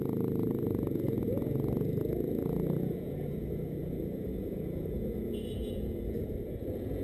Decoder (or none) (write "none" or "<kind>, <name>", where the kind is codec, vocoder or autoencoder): vocoder, Vocos